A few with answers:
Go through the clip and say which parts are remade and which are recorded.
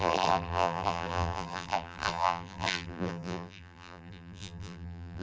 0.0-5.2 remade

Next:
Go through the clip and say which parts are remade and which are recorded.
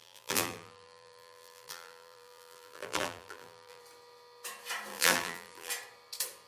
0.0-3.8 remade; 3.8-4.9 recorded; 4.9-5.7 remade; 5.7-6.5 recorded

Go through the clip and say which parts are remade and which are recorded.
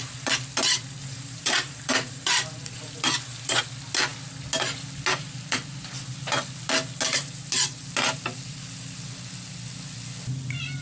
0.0-1.0 recorded; 1.0-3.6 remade; 3.6-10.8 recorded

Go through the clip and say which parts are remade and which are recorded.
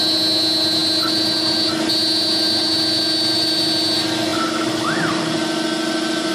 0.0-6.3 recorded